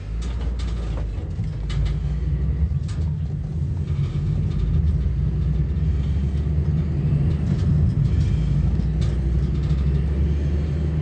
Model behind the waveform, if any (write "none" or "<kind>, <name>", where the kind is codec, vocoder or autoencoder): none